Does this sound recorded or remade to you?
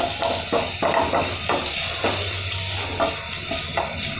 recorded